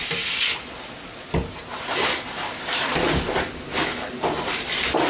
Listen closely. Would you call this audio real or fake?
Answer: real